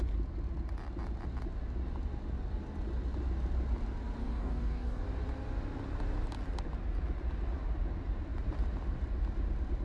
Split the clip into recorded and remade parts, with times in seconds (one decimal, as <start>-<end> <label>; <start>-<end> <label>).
0.0-4.2 recorded; 4.2-5.0 remade; 5.0-9.8 recorded